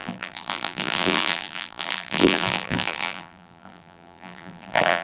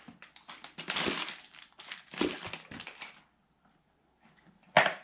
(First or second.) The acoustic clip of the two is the second